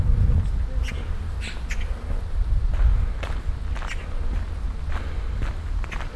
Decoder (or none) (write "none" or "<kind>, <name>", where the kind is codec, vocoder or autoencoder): none